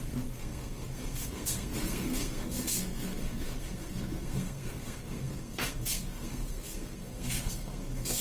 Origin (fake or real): fake